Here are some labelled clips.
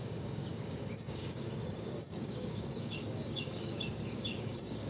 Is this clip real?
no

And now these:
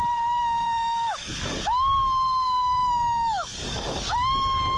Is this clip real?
no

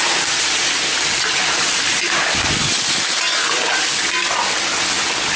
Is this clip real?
yes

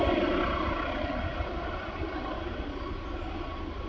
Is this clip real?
yes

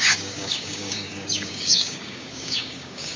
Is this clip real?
no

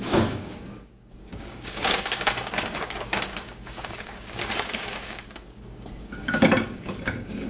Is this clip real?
no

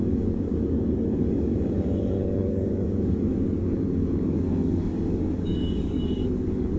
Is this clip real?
no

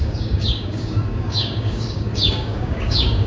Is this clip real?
no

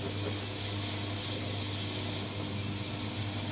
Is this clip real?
yes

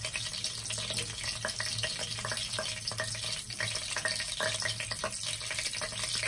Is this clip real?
yes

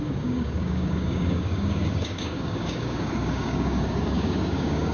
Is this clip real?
no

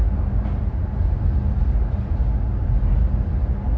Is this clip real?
yes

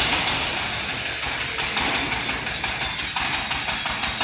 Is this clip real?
yes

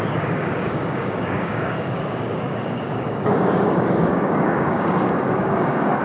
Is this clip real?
no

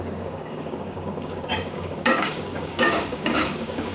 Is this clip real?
no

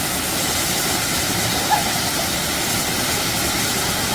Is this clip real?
yes